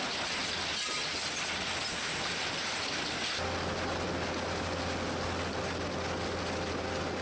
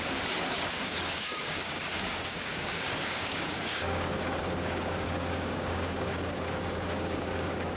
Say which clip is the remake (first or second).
second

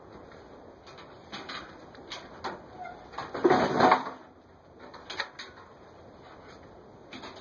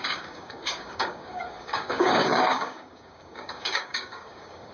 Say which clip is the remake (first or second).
second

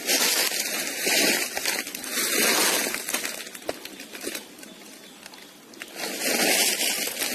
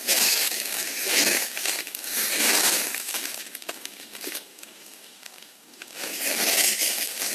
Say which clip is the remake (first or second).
second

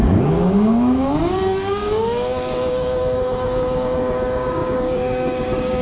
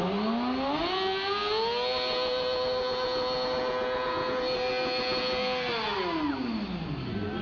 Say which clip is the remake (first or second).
first